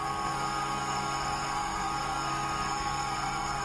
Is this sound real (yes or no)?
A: no